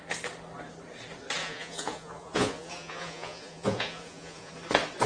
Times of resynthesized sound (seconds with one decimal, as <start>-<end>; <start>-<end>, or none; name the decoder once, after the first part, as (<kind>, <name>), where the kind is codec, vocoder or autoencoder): 1.4-4.5 (vocoder, Vocos)